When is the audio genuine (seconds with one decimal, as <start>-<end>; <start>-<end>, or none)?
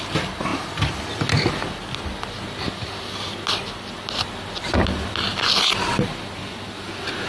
0.0-7.3